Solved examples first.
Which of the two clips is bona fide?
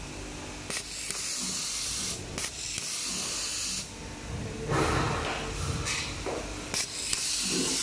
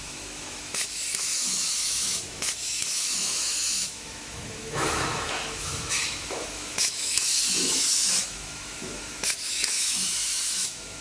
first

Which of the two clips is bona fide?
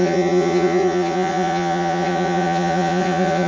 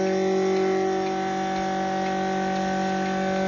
second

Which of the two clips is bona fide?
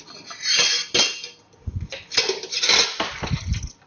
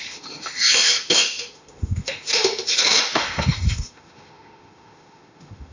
first